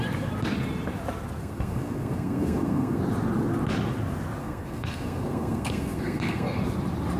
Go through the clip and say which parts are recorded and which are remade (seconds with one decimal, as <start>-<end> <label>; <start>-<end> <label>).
0.0-1.4 recorded; 1.4-3.0 remade; 3.0-4.4 recorded; 4.4-6.6 remade; 6.6-7.2 recorded